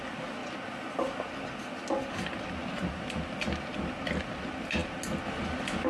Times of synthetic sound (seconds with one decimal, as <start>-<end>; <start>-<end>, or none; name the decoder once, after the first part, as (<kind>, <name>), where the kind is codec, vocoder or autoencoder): none